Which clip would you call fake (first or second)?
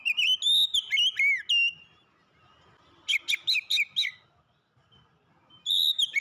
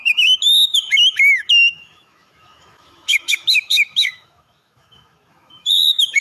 second